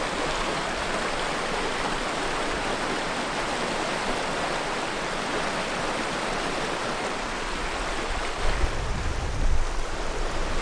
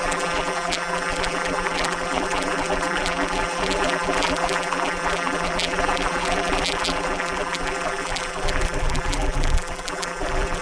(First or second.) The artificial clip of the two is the second